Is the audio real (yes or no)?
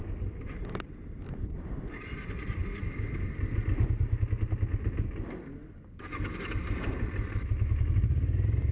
yes